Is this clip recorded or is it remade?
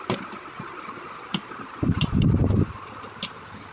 recorded